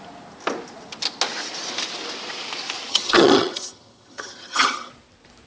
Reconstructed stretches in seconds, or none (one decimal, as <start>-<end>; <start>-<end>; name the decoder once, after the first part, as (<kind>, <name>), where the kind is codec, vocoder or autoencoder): 2.9-4.9 (vocoder, HiFi-GAN)